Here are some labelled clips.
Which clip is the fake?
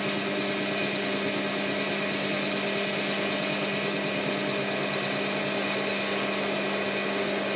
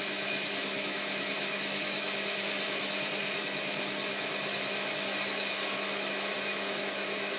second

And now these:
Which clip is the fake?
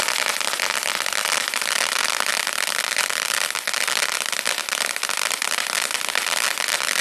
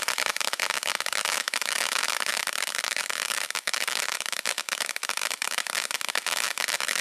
second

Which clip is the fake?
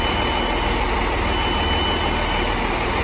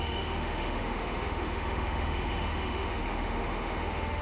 second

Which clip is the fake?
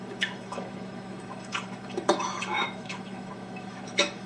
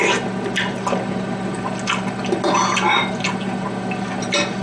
first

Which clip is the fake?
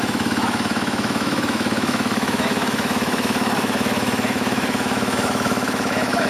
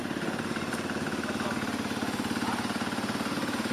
first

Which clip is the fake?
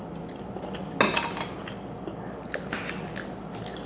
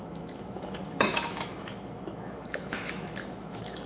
second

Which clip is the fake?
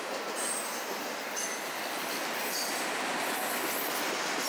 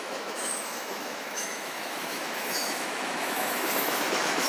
second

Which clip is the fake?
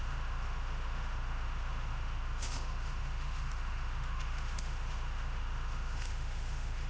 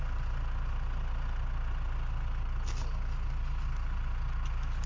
first